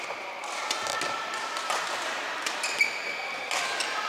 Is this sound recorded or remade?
recorded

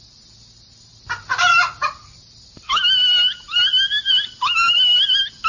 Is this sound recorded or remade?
recorded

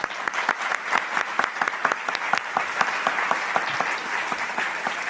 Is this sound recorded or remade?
recorded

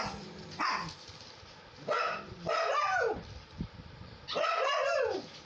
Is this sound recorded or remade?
recorded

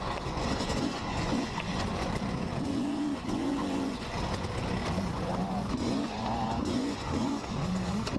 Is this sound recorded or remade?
remade